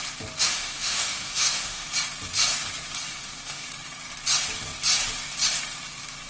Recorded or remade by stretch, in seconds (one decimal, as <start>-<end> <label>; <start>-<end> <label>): 0.0-0.4 recorded; 0.4-1.9 remade; 1.9-3.1 recorded; 3.1-3.7 remade; 3.7-6.3 recorded